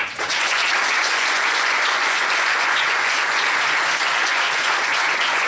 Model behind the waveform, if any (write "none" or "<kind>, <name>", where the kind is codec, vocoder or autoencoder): vocoder, Vocos